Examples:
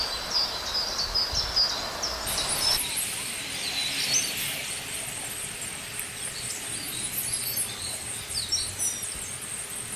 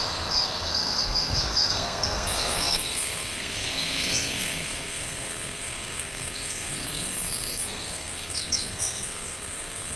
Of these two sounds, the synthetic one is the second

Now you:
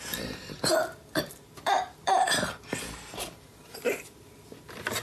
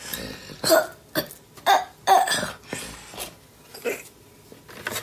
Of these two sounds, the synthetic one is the first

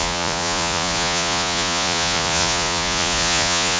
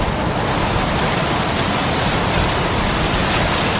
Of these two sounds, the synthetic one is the first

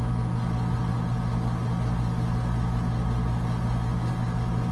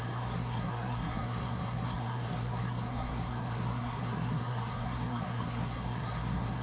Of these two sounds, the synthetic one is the second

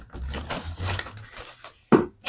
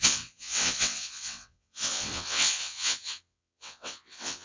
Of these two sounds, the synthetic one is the second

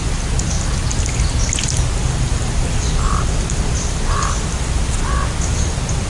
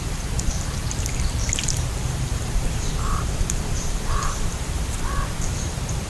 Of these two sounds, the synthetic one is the second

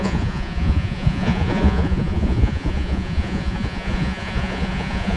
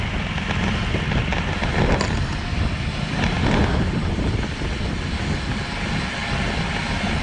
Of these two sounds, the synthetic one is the first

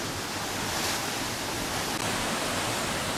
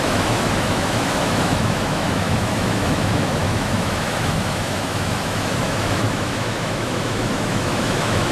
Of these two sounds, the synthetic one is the second